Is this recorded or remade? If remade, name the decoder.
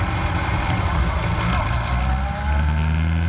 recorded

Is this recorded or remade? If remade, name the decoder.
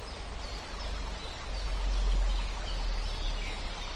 recorded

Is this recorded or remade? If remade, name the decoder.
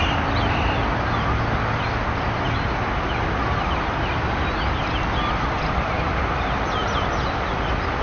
recorded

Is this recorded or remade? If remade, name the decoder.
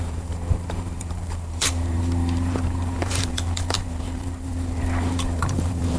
remade, vocoder, BigVGAN v2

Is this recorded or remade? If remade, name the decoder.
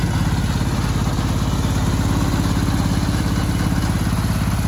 recorded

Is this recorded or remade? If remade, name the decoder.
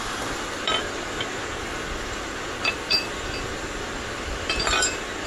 remade, vocoder, BigVGAN v2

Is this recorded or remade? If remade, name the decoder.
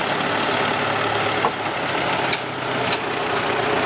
recorded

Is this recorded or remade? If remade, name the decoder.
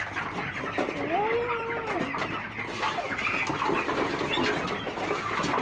recorded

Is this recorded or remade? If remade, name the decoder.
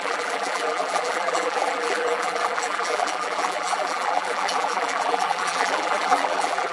remade, vocoder, BigVGAN v2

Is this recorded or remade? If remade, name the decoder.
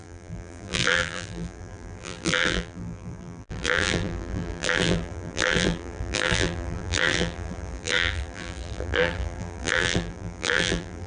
remade, vocoder, BigVGAN v2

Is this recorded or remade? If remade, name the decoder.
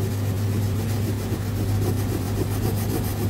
recorded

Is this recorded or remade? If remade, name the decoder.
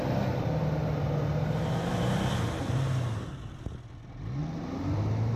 recorded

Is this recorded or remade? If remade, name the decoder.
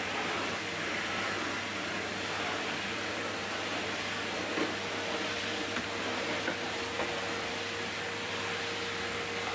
remade, vocoder, BigVGAN v2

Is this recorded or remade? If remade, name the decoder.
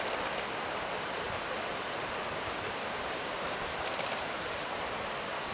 remade, vocoder, BigVGAN v2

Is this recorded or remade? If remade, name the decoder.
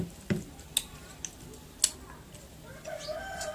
recorded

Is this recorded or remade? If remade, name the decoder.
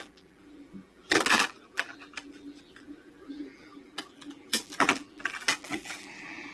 remade, vocoder, BigVGAN v2